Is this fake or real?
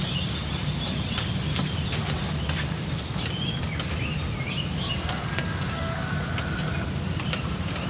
real